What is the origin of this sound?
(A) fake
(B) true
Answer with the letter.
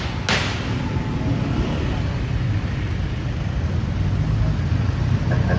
B